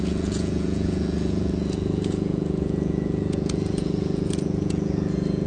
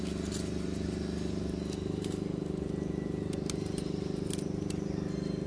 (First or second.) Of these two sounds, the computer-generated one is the first